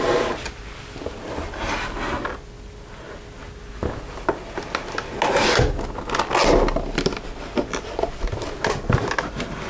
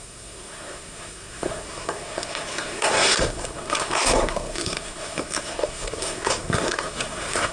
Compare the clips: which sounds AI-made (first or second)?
second